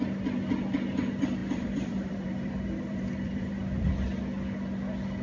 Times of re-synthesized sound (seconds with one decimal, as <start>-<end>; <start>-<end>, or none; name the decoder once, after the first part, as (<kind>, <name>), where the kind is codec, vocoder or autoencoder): 1.4-3.9 (vocoder, BigVGAN v2)